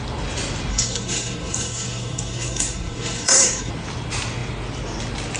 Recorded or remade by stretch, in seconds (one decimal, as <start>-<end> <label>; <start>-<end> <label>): 0.0-0.7 recorded; 0.7-3.7 remade; 3.7-5.4 recorded